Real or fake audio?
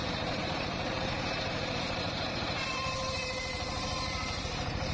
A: fake